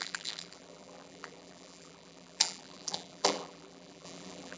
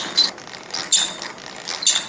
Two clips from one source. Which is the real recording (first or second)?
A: second